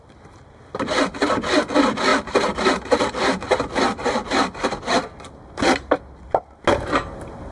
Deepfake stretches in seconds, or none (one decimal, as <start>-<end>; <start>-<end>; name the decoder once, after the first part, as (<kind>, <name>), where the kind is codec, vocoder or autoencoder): none